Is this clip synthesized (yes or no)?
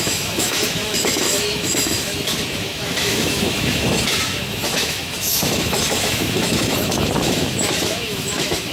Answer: yes